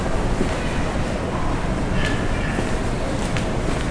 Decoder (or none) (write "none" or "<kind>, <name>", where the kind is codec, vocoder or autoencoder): none